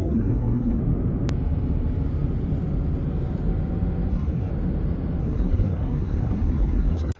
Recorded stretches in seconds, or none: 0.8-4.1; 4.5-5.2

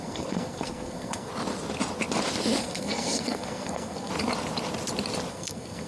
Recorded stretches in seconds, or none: 1.3-2.6; 4.1-5.3

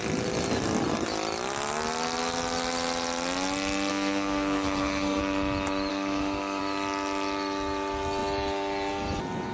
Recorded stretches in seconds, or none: 0.0-3.9; 5.2-5.9; 6.6-9.5